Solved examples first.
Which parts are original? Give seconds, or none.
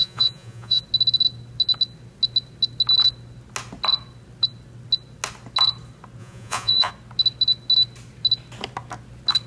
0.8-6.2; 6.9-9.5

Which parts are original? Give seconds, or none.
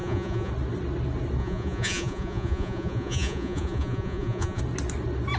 0.5-1.4; 4.6-5.4